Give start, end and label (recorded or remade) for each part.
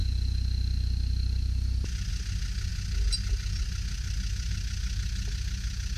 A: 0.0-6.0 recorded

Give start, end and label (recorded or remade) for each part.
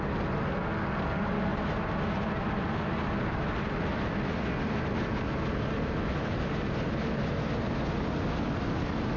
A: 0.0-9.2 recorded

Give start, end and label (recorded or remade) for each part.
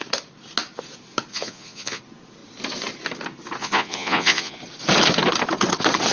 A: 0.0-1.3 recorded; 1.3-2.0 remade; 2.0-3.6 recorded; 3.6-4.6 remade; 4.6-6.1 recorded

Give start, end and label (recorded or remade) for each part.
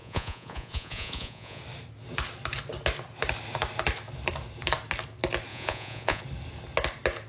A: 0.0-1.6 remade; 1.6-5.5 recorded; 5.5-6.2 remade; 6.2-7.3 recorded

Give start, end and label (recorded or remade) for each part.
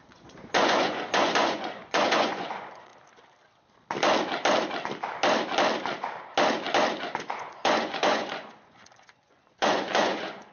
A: 0.0-2.9 remade; 2.9-7.2 recorded; 7.2-10.5 remade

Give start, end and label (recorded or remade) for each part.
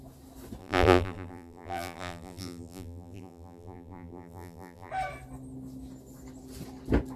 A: 0.0-0.6 recorded; 0.6-4.9 remade; 4.9-7.2 recorded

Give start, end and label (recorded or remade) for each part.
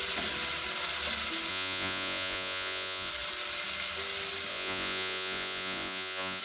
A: 0.0-1.5 recorded; 1.5-3.1 remade; 3.1-4.5 recorded; 4.5-6.4 remade